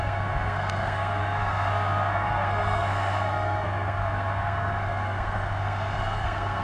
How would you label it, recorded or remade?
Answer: remade